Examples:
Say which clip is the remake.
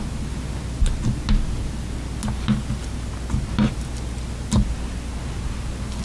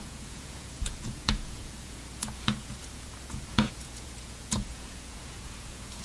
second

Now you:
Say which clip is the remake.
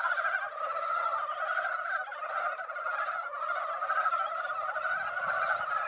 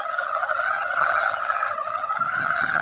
second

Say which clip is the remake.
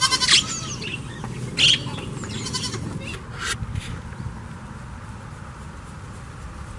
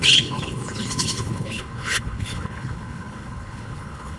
second